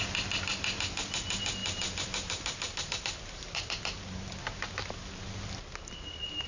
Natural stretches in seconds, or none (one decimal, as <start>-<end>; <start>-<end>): 0.0-1.6; 5.5-6.5